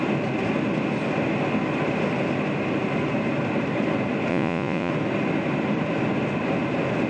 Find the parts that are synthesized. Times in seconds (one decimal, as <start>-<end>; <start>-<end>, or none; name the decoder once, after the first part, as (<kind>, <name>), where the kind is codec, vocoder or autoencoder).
4.3-4.9 (vocoder, Vocos)